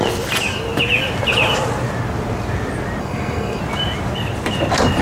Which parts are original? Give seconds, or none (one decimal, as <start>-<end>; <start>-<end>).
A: 0.0-3.0; 3.6-5.0